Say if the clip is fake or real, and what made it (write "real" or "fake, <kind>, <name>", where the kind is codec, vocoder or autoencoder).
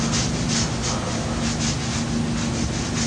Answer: real